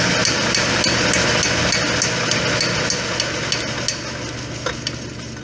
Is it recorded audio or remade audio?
recorded